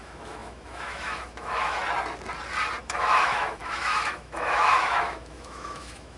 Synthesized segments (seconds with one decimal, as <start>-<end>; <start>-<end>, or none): 0.0-1.8; 2.8-6.2